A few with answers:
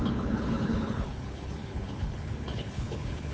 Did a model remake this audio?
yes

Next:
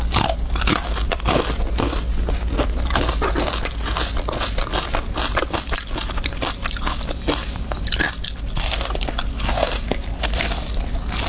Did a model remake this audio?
no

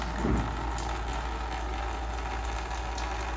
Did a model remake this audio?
no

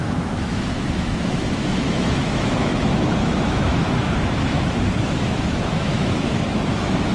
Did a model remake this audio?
yes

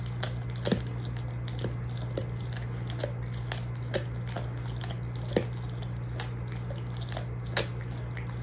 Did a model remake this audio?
no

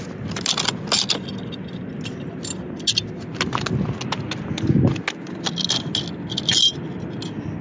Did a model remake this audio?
no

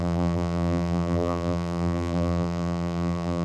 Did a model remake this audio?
yes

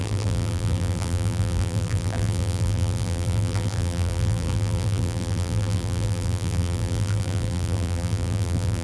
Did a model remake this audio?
yes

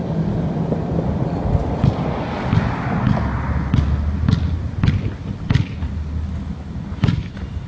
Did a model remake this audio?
no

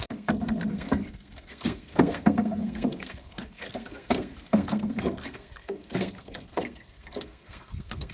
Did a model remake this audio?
yes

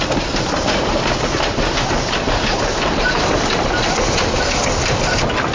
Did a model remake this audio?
no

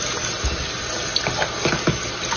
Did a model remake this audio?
no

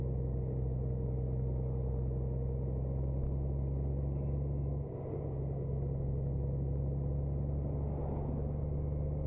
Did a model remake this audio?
no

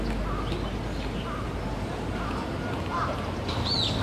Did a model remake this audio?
no